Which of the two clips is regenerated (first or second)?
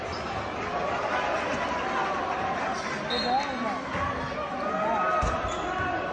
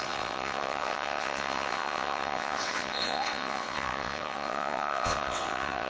second